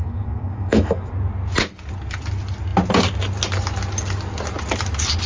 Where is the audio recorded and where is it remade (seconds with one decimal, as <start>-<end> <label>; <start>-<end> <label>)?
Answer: 0.0-1.1 remade; 1.1-5.3 recorded